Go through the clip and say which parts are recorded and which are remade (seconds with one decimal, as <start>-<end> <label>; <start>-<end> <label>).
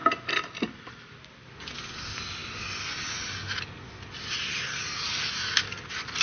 0.0-6.2 recorded